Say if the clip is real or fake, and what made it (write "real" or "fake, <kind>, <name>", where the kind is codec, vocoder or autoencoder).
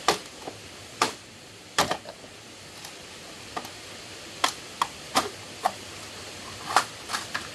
real